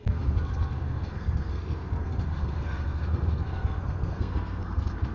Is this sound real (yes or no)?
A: no